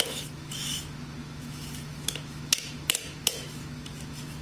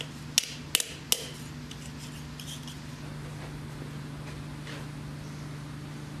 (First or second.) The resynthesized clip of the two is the first